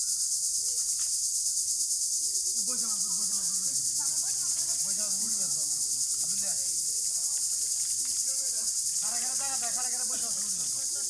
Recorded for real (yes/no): yes